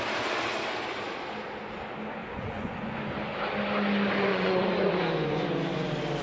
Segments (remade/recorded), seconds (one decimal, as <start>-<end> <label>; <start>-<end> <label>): 0.0-2.2 recorded; 2.2-3.0 remade; 3.0-4.3 recorded; 4.3-5.4 remade; 5.4-6.2 recorded